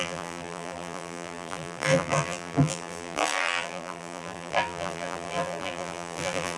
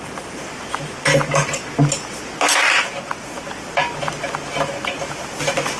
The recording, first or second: second